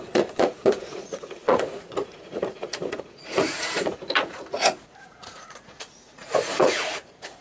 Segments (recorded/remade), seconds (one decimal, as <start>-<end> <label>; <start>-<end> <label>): 0.0-7.4 remade